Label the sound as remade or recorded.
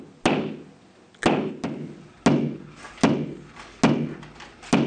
recorded